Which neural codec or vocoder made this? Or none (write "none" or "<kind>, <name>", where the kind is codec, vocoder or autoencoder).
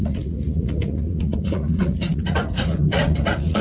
vocoder, Vocos